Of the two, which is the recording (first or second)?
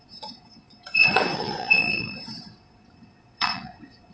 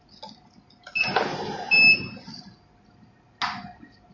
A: second